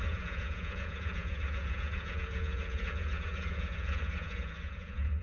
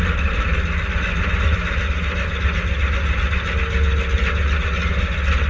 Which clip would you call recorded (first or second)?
second